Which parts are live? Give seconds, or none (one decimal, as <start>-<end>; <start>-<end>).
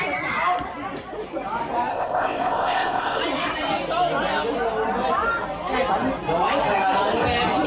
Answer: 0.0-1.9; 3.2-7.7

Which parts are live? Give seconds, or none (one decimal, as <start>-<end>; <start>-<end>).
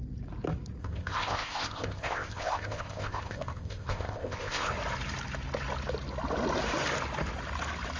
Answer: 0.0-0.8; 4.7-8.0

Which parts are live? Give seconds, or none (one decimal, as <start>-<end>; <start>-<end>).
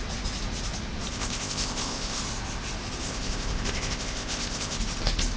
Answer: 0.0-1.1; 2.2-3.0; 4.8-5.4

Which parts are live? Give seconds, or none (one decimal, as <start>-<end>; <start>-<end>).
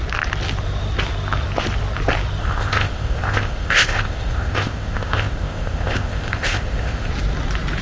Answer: 0.0-2.4; 7.1-7.8